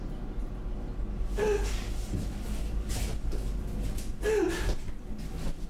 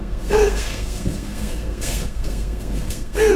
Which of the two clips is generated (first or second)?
second